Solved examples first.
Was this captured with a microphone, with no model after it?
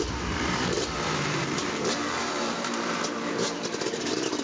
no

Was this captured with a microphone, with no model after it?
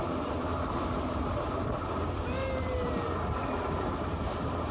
no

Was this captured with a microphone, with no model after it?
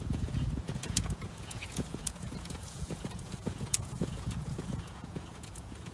no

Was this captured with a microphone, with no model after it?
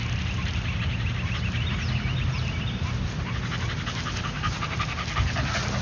yes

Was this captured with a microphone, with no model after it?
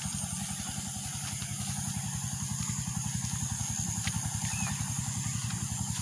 yes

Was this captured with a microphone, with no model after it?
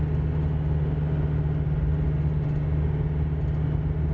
yes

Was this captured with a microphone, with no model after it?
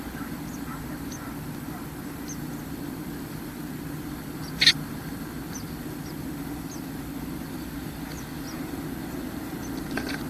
yes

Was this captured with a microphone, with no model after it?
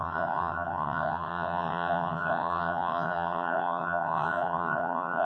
no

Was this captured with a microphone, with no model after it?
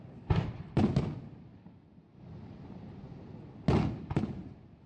yes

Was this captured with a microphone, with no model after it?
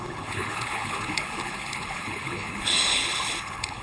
no